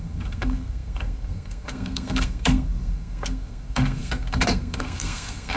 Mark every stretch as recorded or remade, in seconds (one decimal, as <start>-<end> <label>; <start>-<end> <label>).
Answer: 0.0-5.6 remade